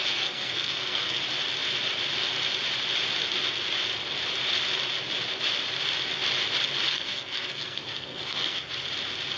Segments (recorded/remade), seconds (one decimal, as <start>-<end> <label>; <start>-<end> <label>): 0.0-1.2 remade; 1.2-6.9 recorded; 6.9-8.7 remade; 8.7-9.4 recorded